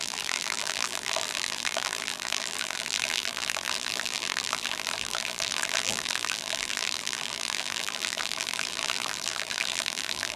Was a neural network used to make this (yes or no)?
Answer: yes